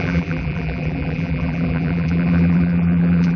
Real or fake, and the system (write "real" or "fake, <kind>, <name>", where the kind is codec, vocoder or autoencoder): fake, vocoder, BigVGAN v2